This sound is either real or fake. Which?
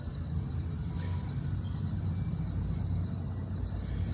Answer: real